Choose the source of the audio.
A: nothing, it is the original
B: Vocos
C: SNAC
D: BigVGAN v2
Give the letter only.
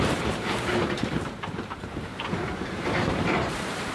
D